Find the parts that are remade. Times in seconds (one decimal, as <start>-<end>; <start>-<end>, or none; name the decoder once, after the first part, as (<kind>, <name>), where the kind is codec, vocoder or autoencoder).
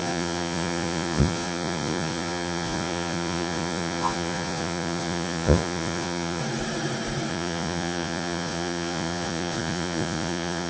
0.0-6.4 (vocoder, Vocos); 7.3-10.7